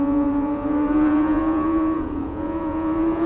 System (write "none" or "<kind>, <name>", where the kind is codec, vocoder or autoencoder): vocoder, Vocos